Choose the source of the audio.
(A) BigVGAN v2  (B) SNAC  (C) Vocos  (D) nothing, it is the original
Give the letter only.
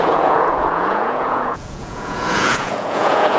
C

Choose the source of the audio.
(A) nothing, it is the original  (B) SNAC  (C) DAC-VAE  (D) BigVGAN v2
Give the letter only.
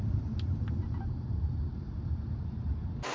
D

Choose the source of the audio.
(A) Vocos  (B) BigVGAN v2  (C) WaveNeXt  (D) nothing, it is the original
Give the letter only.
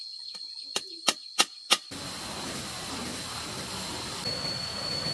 D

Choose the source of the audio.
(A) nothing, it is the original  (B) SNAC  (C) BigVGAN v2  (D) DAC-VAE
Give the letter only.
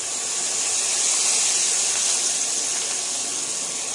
A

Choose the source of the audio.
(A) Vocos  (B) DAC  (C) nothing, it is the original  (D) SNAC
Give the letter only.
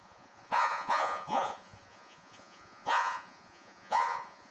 A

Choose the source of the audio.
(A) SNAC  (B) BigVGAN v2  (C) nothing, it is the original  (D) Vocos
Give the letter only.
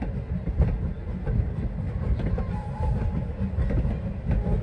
C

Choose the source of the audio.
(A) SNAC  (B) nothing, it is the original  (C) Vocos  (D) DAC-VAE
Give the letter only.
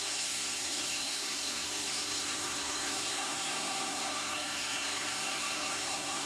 A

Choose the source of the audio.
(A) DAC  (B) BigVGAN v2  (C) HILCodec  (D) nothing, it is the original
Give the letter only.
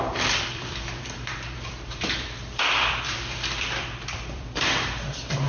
B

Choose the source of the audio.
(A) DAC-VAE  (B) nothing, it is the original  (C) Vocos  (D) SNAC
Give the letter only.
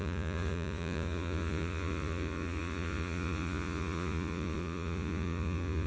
C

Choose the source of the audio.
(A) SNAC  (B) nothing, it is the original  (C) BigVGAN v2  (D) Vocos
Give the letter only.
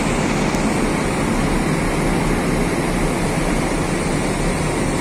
B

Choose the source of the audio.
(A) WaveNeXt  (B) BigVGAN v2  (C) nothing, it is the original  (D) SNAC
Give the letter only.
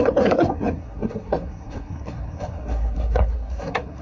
D